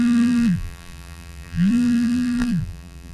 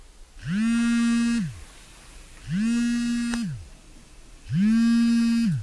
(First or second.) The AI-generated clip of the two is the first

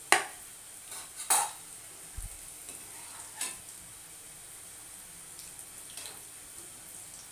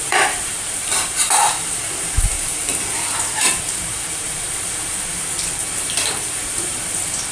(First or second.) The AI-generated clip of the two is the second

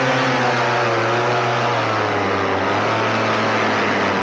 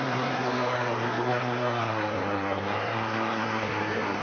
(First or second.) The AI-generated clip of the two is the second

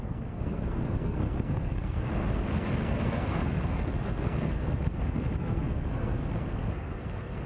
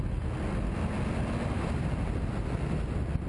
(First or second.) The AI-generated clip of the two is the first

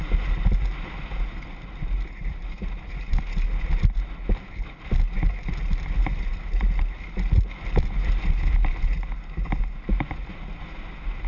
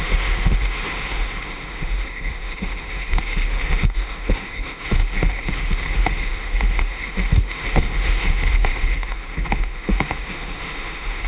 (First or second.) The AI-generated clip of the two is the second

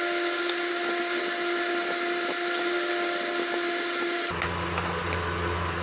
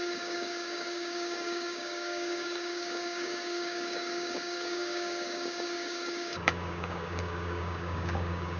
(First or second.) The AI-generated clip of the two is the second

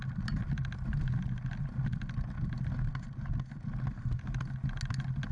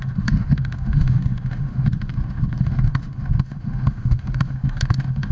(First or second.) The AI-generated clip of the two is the second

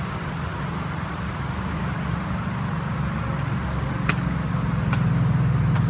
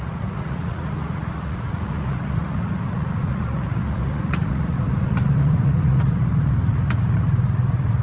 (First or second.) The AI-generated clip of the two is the second